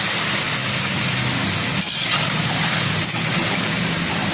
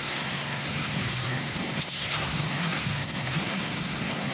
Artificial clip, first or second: second